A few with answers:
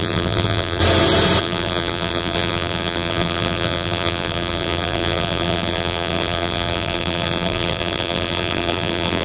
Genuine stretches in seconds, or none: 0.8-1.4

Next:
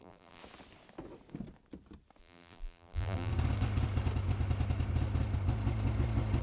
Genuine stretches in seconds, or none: 0.4-2.2; 3.3-6.4

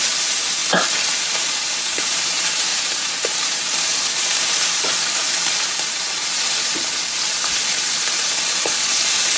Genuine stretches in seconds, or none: 0.6-1.2

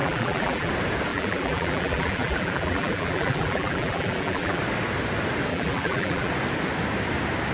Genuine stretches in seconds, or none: 0.7-1.1; 4.6-5.5; 6.3-7.5

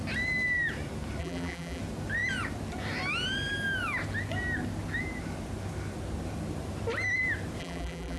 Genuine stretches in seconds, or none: 0.0-1.2; 1.8-7.6